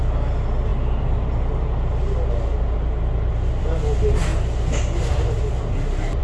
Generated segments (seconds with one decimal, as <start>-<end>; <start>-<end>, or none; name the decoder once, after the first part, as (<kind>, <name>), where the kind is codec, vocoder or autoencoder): none